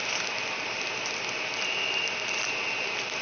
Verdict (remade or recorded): recorded